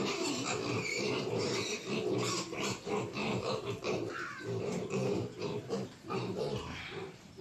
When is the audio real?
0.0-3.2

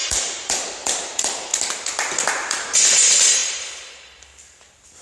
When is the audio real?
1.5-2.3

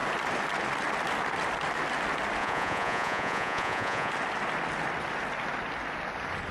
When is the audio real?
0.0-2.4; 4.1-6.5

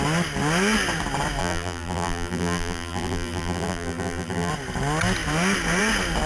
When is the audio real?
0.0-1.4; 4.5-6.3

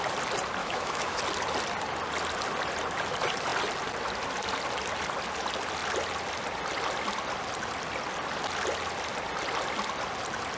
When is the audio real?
0.0-0.6; 1.2-10.6

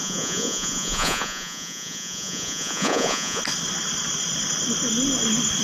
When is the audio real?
3.4-5.6

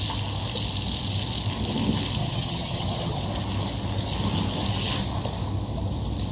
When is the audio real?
0.0-2.2; 3.2-6.3

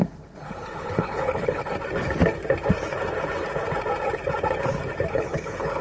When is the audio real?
1.6-5.1